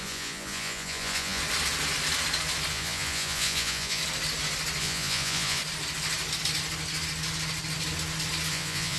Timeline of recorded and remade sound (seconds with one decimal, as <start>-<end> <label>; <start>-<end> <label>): 0.0-1.4 remade; 1.4-2.7 recorded; 2.7-4.0 remade; 4.0-4.8 recorded; 4.8-5.6 remade; 5.6-8.5 recorded; 8.5-9.0 remade